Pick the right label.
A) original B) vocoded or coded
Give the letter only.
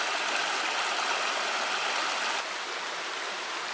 A